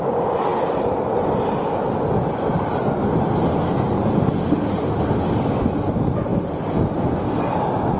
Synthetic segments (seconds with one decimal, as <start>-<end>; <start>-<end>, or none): none